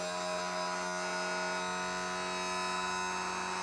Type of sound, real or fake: real